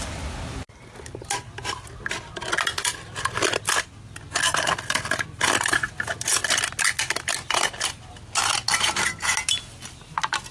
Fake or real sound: real